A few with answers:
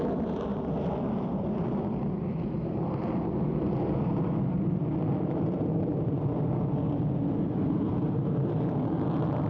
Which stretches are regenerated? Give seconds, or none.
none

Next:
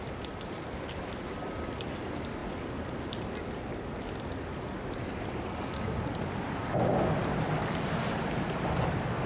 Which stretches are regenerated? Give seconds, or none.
none

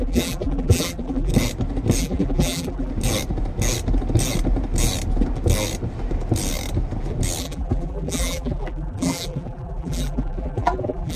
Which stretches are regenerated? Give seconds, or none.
0.0-1.3 (vocoder, BigVGAN v2); 2.0-2.9; 7.4-11.2

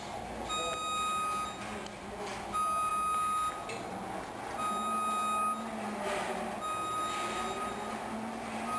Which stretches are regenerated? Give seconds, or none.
none